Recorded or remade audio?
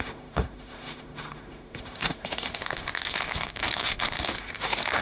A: remade